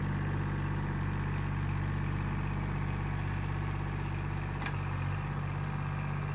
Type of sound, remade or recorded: recorded